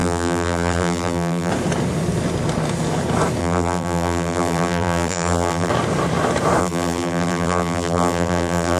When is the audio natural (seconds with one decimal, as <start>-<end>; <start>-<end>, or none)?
1.5-3.4; 5.7-6.6